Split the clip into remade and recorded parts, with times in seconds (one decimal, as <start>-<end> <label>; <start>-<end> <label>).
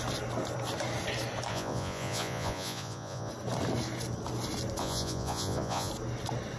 0.0-1.5 recorded; 1.5-3.3 remade; 3.3-4.8 recorded; 4.8-5.9 remade; 5.9-6.6 recorded